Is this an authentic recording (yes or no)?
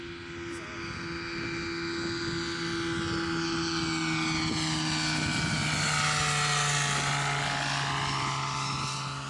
yes